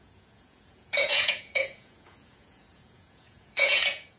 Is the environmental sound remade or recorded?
remade